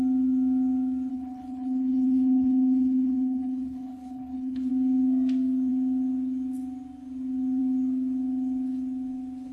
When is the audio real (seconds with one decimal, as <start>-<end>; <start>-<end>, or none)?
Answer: 0.0-1.1; 4.7-9.5